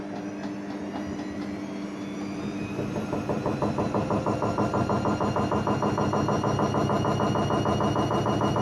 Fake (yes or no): no